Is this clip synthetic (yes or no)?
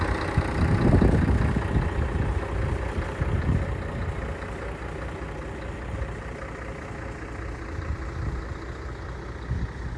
no